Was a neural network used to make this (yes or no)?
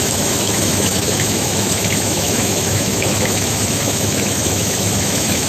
yes